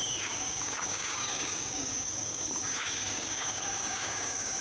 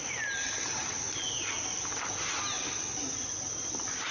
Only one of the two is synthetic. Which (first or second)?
first